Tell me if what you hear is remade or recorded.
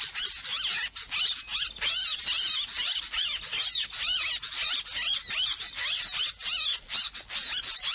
recorded